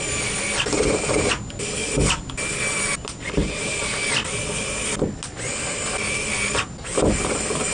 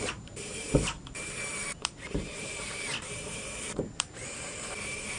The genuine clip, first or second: first